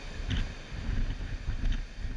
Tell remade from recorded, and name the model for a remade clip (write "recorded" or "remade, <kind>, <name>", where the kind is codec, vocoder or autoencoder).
recorded